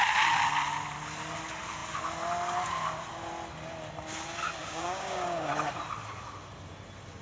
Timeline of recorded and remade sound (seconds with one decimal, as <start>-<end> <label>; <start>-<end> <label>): 0.0-4.6 recorded; 4.6-5.5 remade; 5.5-7.2 recorded